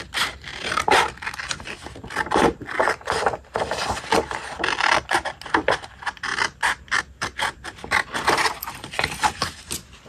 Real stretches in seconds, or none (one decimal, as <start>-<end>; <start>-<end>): 0.0-10.1